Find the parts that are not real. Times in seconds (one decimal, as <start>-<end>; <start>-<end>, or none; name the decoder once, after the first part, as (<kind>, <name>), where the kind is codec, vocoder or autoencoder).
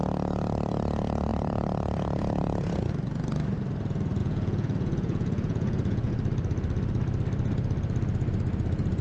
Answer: 4.2-6.1 (vocoder, Vocos)